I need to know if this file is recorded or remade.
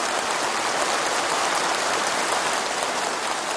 recorded